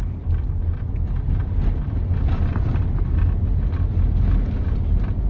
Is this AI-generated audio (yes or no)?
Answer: no